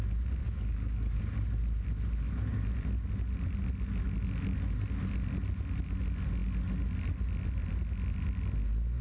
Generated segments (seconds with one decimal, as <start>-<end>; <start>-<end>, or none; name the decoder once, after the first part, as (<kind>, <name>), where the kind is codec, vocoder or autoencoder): 0.4-1.2 (codec, DAC)